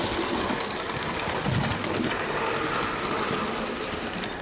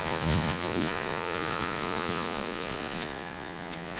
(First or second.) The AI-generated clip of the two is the second